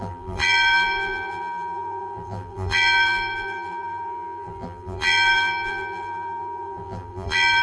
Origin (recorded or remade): remade